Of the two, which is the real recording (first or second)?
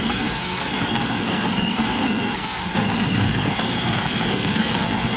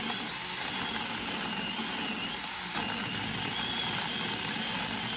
second